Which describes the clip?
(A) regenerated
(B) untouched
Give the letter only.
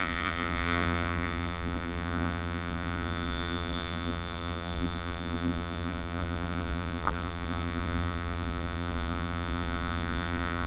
A